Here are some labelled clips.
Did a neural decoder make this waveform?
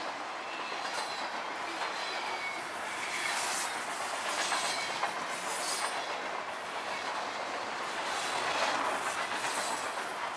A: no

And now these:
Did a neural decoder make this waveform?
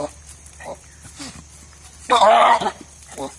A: no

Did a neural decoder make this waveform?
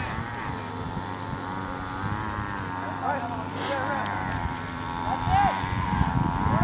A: no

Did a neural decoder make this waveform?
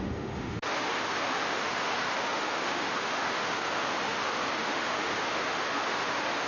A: yes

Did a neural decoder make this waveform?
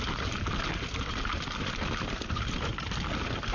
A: no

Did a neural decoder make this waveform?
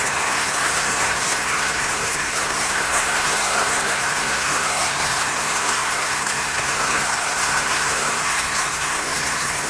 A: yes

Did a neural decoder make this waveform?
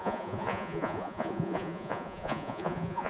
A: yes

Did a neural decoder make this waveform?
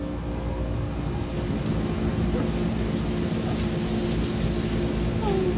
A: no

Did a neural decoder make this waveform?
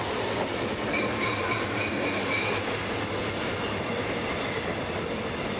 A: no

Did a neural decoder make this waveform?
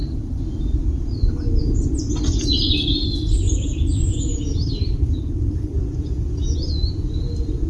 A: no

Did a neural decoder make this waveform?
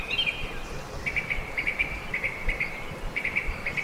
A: yes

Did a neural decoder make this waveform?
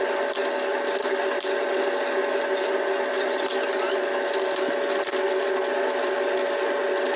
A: no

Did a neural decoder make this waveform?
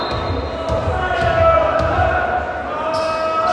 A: no